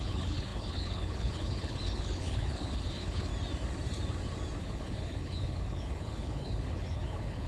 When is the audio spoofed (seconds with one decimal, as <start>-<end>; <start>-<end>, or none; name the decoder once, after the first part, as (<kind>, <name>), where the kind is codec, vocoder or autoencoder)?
0.0-3.3 (codec, HILCodec); 4.6-7.5